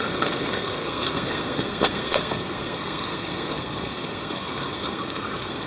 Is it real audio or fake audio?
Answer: fake